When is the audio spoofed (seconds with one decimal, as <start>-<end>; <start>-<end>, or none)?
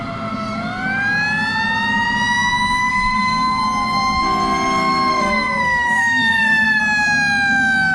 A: 2.9-3.6; 5.1-6.8